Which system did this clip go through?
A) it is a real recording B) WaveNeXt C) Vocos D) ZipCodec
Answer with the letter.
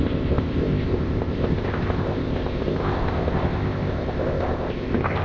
D